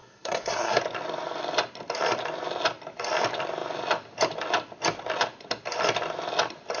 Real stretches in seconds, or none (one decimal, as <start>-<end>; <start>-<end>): 0.8-6.8